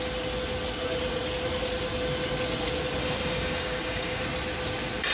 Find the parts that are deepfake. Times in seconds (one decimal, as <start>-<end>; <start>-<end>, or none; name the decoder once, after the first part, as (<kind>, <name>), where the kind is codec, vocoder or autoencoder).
3.0-4.2 (codec, DAC)